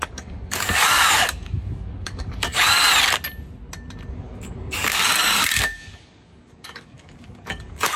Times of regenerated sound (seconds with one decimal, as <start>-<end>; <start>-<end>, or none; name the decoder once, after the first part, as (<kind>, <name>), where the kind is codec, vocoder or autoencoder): 0.0-2.8 (codec, DAC); 4.1-8.0